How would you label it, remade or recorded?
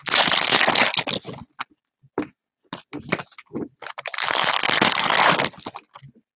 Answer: recorded